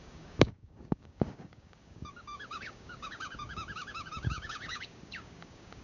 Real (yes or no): no